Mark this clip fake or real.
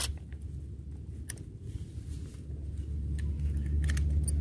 real